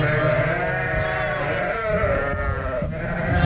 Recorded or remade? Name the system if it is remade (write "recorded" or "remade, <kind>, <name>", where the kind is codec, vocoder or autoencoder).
recorded